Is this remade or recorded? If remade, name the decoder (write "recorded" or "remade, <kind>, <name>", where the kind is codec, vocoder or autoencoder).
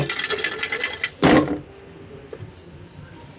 recorded